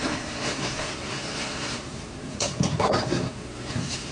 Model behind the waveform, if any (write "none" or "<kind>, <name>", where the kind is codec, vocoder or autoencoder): codec, SNAC